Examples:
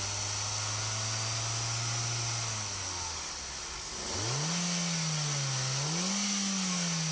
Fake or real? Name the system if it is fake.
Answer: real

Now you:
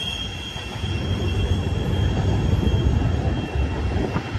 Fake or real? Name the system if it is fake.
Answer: real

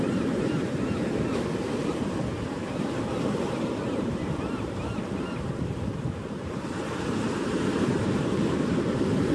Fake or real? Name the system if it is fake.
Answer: fake, vocoder, BigVGAN v2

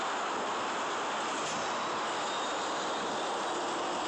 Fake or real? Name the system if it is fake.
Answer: real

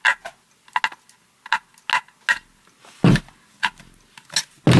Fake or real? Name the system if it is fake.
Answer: real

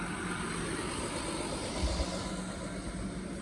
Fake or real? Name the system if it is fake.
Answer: real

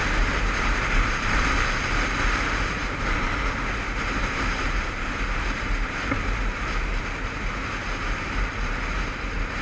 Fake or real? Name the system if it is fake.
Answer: fake, vocoder, BigVGAN v2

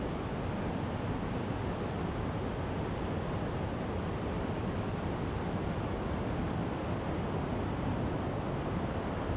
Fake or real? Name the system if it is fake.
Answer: real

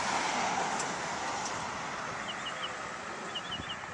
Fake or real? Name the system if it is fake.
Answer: real